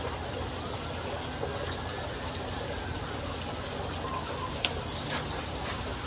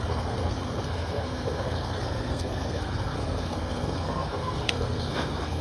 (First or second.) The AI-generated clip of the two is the second